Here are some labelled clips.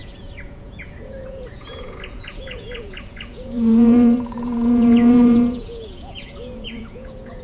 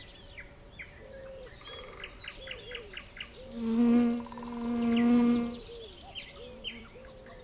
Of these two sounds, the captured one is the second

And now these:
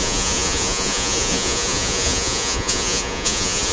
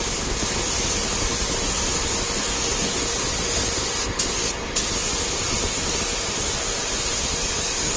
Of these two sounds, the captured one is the second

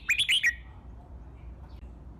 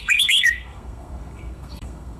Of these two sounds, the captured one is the first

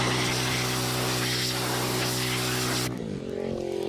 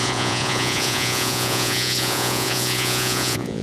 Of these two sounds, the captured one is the first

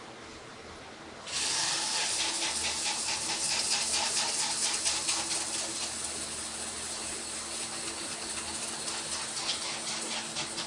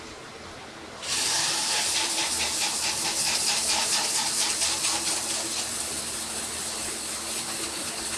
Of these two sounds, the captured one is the first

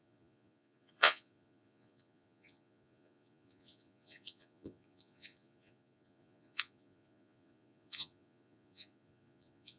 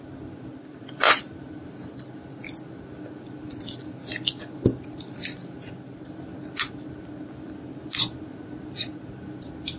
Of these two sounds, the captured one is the second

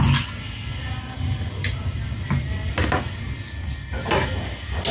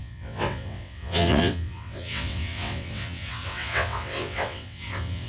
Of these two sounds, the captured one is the first